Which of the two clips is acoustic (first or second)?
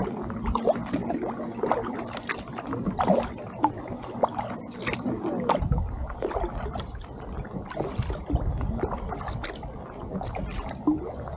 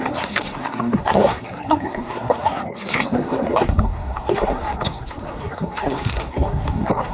first